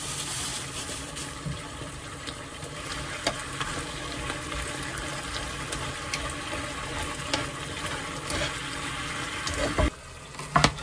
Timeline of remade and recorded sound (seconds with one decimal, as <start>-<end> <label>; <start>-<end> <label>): 0.0-0.5 recorded; 0.5-3.8 remade; 3.8-10.8 recorded